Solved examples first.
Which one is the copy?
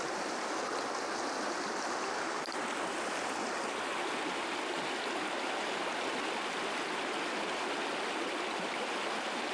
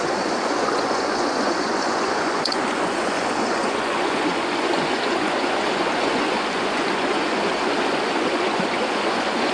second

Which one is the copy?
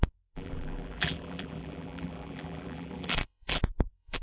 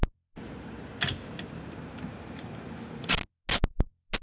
first